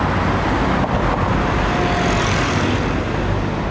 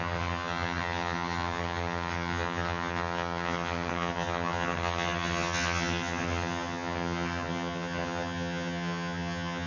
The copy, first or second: second